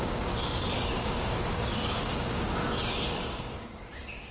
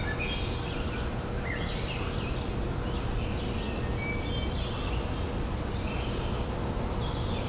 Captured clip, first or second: second